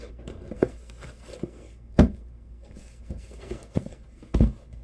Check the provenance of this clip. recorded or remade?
remade